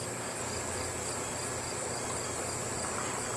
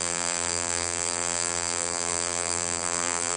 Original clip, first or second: first